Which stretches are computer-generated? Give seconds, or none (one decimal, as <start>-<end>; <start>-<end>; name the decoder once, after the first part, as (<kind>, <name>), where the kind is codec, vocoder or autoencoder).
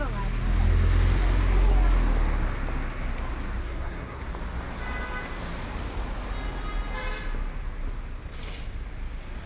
3.6-4.2 (codec, SNAC)